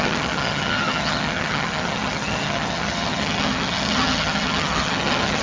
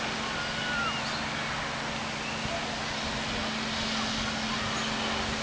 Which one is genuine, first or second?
second